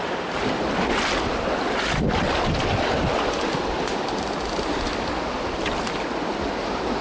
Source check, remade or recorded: recorded